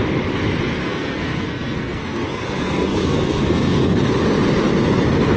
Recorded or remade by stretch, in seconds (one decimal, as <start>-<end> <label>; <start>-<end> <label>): 0.0-0.8 recorded; 0.8-4.0 remade; 4.0-5.4 recorded